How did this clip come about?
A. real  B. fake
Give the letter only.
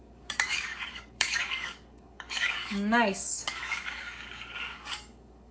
B